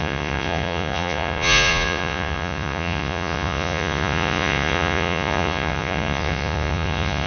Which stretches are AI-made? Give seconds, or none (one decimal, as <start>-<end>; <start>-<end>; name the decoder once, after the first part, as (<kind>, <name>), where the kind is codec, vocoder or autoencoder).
0.0-7.3 (vocoder, Vocos)